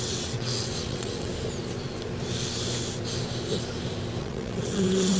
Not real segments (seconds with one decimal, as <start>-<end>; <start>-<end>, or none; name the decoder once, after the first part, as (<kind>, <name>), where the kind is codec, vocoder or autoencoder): 0.0-1.3 (vocoder, WaveNeXt); 4.2-5.2

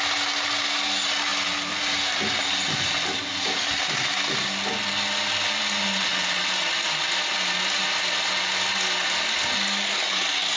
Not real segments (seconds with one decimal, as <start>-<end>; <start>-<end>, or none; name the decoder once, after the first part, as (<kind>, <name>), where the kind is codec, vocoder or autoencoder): none

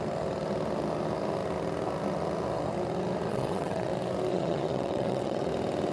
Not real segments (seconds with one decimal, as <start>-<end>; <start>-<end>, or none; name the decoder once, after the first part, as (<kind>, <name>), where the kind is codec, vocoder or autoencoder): 3.3-3.9 (vocoder, WaveNeXt); 4.3-5.5

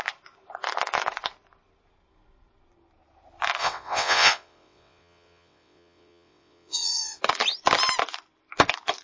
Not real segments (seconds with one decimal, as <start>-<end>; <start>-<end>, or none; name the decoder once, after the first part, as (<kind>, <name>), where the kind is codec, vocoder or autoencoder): 3.6-7.2 (vocoder, WaveNeXt)

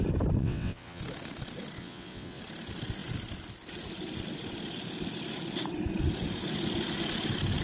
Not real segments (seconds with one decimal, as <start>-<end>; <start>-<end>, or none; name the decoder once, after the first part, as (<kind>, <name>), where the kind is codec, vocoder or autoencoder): 0.4-1.0 (vocoder, WaveNeXt); 1.8-2.4

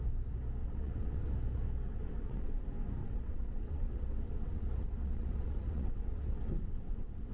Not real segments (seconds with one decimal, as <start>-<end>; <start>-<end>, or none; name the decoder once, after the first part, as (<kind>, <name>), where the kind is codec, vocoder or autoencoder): 0.6-1.3 (vocoder, WaveNeXt); 2.0-2.5; 3.0-7.3

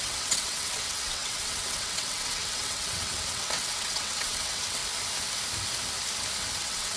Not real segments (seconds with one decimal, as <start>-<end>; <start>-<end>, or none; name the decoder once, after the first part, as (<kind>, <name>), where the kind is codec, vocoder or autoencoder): 0.0-4.8 (vocoder, WaveNeXt); 6.6-7.0